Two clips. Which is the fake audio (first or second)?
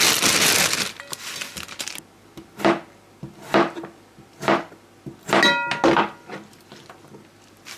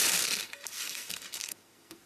second